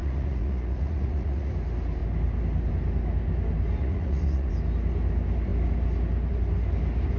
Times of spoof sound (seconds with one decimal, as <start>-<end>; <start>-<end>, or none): 0.0-1.5; 3.8-4.5